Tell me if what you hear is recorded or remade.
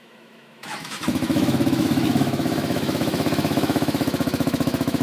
remade